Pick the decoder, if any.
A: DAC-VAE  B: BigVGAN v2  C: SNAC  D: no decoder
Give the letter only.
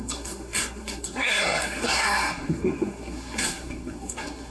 C